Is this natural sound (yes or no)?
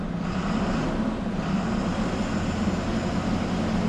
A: yes